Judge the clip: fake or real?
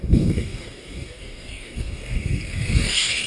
fake